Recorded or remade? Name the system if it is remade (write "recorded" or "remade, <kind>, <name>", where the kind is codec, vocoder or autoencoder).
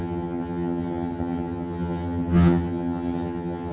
remade, vocoder, HiFi-GAN